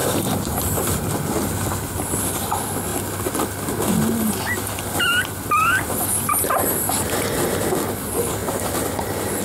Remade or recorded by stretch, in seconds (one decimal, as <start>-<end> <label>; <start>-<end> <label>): 0.0-9.4 recorded